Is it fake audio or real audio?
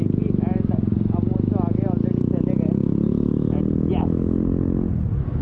real